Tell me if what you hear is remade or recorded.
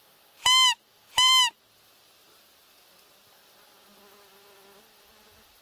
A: recorded